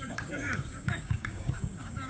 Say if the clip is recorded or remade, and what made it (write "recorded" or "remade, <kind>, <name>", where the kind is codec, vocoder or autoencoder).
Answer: remade, codec, DAC